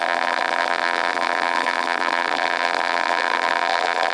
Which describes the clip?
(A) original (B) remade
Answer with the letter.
B